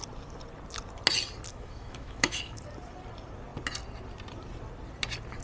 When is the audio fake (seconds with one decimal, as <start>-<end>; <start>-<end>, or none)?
1.5-2.6